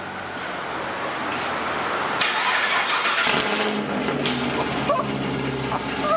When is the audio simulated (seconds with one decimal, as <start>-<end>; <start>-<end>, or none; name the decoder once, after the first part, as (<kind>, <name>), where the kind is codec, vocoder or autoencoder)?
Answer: none